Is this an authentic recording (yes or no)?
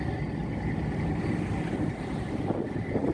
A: yes